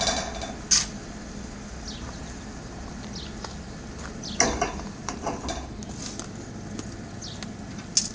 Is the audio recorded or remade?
recorded